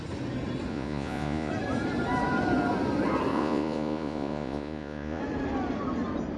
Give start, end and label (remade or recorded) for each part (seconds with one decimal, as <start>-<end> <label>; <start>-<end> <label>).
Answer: 0.0-0.7 recorded; 0.7-1.5 remade; 1.5-3.3 recorded; 3.3-5.2 remade; 5.2-6.4 recorded